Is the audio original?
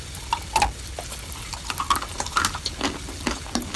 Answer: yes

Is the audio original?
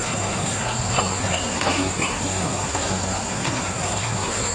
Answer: no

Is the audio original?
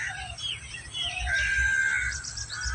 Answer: yes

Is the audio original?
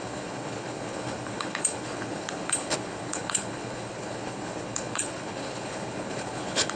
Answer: no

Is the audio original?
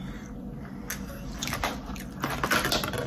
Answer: yes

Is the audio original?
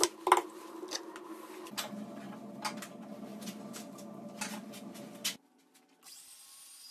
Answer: yes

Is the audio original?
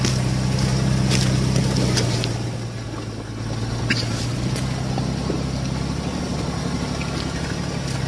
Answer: yes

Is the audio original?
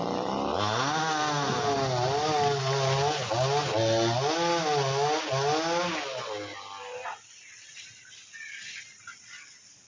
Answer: yes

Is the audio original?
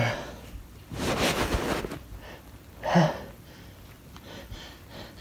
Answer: yes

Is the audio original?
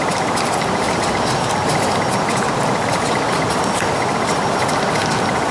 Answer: yes